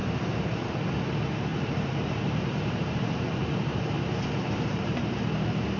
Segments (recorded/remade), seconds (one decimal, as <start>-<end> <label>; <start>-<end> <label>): 0.0-0.7 remade; 0.7-1.5 recorded; 1.5-5.0 remade; 5.0-5.8 recorded